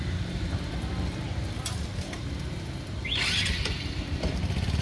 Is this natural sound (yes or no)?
yes